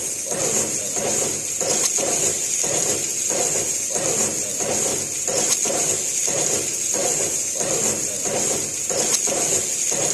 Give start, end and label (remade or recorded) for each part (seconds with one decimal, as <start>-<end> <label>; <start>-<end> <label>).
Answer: 0.0-10.1 recorded